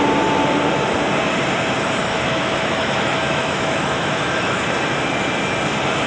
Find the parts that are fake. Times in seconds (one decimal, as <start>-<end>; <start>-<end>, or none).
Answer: 2.0-4.6